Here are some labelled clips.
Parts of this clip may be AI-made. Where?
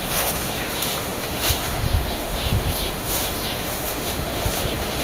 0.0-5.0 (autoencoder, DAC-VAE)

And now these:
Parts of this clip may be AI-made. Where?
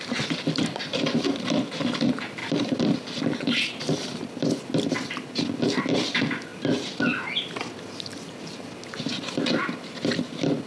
none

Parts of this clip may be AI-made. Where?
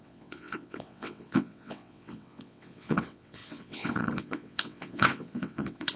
0.0-6.0 (vocoder, WaveNeXt)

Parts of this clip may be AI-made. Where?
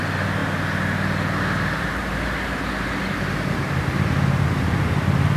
0.0-0.4 (vocoder, BigVGAN v2); 3.6-5.4